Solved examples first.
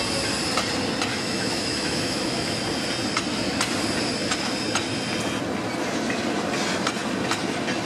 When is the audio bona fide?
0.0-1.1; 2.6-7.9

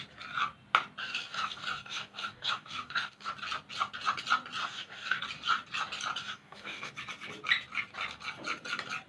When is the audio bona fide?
0.0-1.0; 3.3-4.6; 5.2-6.2; 6.9-9.1